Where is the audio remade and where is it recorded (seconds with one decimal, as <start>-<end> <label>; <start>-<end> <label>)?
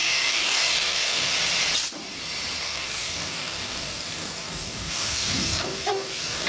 0.0-1.3 remade; 1.3-2.6 recorded; 2.6-6.5 remade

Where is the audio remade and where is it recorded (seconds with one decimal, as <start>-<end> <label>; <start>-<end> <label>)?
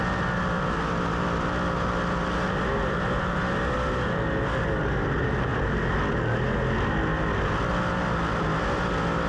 0.0-9.3 recorded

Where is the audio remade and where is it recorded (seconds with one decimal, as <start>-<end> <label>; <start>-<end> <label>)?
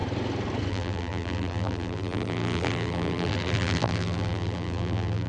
0.0-0.7 recorded; 0.7-5.3 remade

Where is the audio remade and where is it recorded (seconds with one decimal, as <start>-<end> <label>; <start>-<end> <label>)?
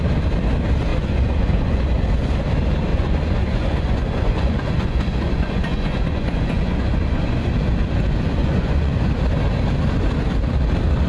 0.0-0.9 recorded; 0.9-1.8 remade; 1.8-2.9 recorded; 2.9-7.5 remade; 7.5-8.4 recorded; 8.4-9.1 remade; 9.1-11.1 recorded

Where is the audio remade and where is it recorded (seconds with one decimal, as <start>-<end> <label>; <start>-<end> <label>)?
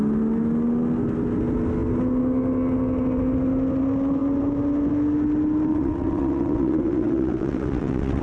0.0-5.7 recorded; 5.7-8.2 remade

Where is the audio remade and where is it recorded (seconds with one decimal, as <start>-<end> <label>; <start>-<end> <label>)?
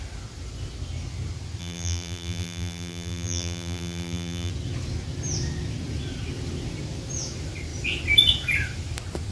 0.0-1.6 recorded; 1.6-4.5 remade; 4.5-9.3 recorded